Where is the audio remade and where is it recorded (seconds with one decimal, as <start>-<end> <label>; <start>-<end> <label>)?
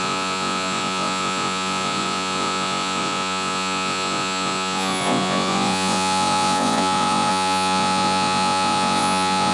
0.0-9.5 remade